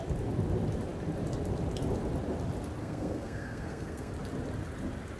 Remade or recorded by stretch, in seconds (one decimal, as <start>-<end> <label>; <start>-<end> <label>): 0.0-2.8 recorded; 2.8-4.1 remade; 4.1-5.2 recorded